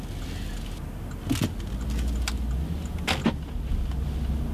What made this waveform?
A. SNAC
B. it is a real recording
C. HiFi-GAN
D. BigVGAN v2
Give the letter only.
B